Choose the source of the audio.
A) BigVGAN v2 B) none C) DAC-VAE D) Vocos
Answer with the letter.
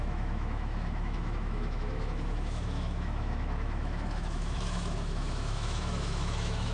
C